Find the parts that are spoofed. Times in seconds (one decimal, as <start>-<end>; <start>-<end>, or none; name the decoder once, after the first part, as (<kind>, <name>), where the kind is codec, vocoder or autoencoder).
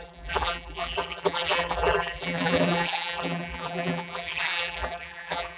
0.0-5.6 (vocoder, BigVGAN v2)